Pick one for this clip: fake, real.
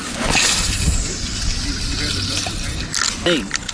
real